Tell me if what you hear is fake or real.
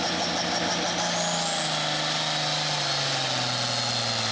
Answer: real